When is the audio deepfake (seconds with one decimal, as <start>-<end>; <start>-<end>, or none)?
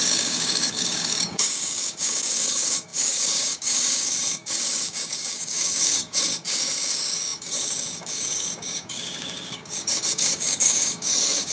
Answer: 0.0-11.5